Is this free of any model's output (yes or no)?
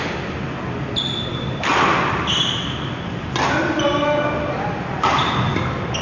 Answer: yes